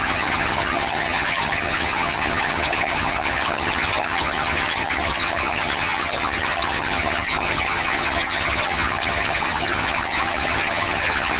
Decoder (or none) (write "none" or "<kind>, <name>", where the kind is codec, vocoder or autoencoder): vocoder, HiFi-GAN